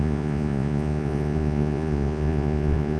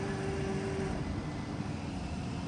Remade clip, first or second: first